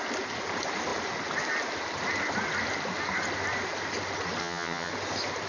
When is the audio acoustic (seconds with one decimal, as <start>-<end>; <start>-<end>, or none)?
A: 0.0-4.4; 4.9-5.5